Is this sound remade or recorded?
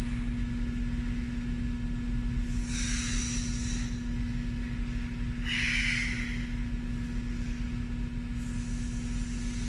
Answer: recorded